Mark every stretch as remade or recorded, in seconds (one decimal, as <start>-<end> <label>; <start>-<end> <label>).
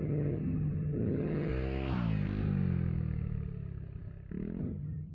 0.0-1.5 remade; 1.5-4.6 recorded; 4.6-5.1 remade